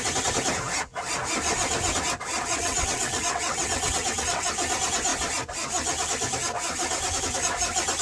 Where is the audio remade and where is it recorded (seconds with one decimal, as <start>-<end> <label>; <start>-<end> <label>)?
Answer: 0.0-2.3 recorded; 2.3-4.5 remade; 4.5-8.0 recorded